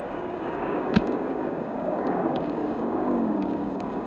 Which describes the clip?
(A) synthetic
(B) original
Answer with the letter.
A